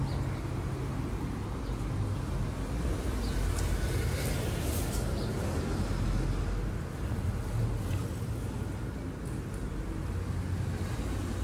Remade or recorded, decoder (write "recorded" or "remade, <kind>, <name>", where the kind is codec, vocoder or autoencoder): recorded